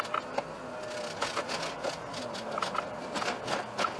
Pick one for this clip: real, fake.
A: real